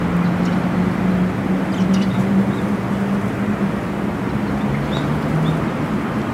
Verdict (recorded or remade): recorded